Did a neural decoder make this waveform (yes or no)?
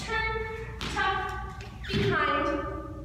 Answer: no